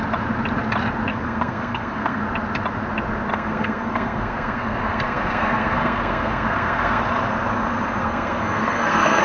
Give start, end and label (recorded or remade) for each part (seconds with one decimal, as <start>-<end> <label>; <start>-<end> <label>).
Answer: 0.0-1.1 recorded; 1.1-2.2 remade; 2.2-3.3 recorded; 3.3-7.0 remade; 7.0-8.0 recorded; 8.0-9.2 remade